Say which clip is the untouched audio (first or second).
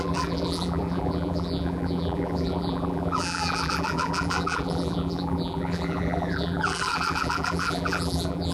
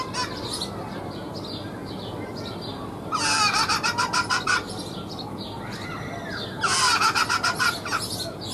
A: second